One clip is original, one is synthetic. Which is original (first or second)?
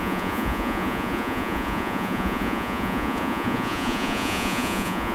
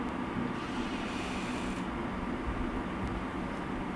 second